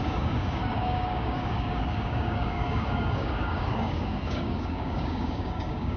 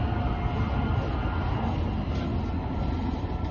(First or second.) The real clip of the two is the second